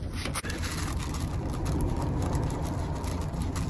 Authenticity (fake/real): real